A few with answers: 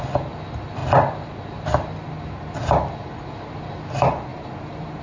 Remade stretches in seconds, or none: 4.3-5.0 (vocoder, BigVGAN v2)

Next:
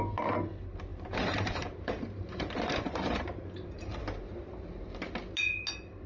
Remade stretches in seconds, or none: 0.9-4.0 (vocoder, BigVGAN v2)

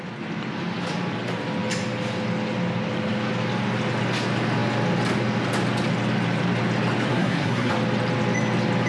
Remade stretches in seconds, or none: 7.1-7.7 (codec, SNAC)